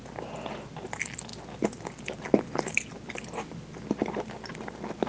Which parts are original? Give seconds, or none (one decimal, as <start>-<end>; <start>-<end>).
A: 0.0-5.1